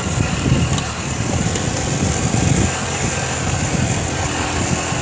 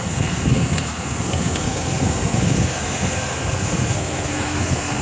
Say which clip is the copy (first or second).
second